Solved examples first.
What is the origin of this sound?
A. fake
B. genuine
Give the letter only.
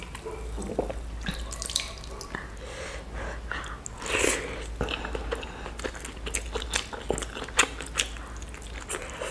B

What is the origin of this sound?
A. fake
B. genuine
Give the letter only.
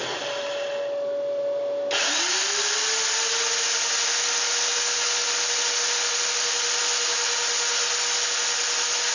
B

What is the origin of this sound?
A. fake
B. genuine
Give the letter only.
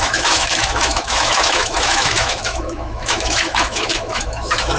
A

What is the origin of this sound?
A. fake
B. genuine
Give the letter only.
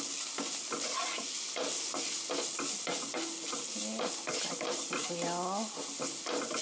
B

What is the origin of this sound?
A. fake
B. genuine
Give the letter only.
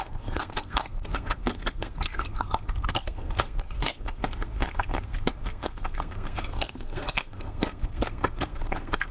A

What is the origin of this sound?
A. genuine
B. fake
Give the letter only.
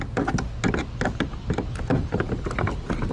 A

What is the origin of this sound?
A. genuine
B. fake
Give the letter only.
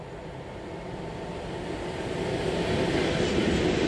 A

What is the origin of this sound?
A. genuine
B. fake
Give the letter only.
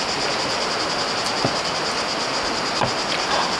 A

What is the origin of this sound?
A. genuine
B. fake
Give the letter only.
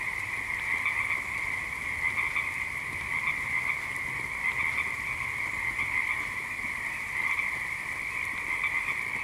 A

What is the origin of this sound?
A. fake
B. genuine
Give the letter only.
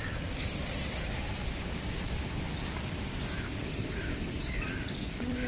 A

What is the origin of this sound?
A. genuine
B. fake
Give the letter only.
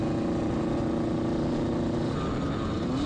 A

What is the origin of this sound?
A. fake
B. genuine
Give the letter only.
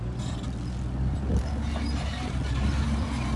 B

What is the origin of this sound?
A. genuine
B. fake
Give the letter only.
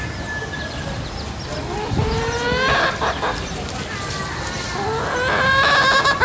A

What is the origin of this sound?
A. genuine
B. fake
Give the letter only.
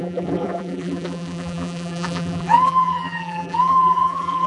B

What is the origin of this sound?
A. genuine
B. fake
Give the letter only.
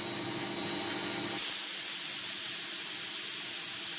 A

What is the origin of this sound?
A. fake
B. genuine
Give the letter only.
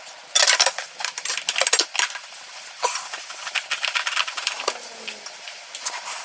B